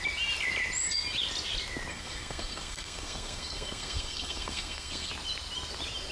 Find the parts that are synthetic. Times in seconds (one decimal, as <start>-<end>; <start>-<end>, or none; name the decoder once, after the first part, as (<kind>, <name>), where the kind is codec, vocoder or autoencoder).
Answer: 1.9-5.1 (codec, SNAC)